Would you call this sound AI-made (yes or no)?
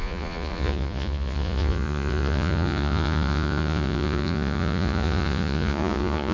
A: yes